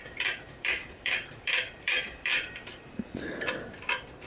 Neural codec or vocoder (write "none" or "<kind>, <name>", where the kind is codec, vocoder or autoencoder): vocoder, BigVGAN v2